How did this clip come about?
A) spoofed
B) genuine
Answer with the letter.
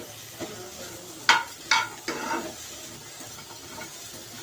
B